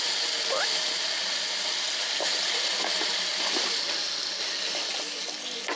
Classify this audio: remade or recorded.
recorded